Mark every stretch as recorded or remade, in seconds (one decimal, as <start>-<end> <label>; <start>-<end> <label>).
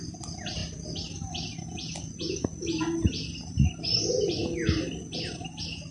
0.0-3.4 recorded; 3.4-4.3 remade; 4.3-5.9 recorded